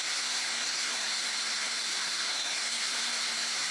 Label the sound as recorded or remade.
remade